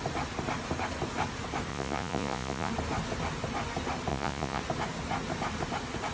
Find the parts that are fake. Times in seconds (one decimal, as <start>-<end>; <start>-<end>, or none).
1.7-2.7; 4.1-4.6